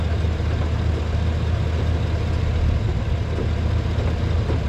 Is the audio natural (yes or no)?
yes